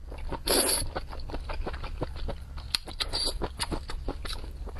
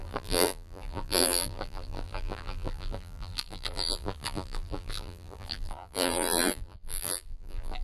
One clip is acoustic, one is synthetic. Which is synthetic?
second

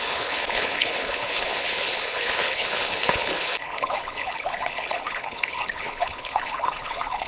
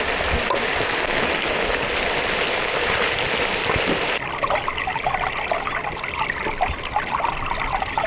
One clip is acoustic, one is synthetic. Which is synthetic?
first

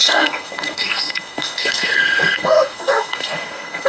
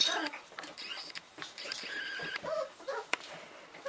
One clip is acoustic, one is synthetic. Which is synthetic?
first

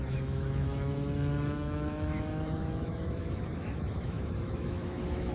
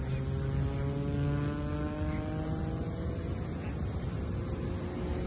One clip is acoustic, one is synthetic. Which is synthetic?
first